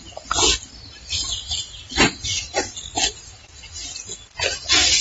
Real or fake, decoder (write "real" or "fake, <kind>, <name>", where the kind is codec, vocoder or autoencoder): real